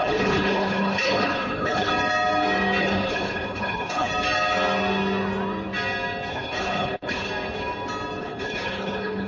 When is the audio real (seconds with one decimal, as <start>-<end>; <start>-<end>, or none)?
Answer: 1.9-2.8; 4.1-6.3; 7.3-8.2